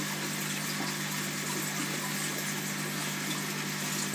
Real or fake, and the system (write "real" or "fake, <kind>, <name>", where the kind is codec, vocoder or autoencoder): real